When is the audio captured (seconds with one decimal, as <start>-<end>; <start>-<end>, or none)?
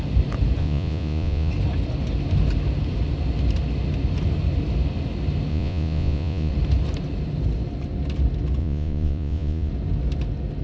0.0-0.6; 1.5-5.5; 6.5-8.6; 9.7-10.6